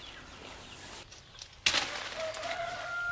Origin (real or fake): real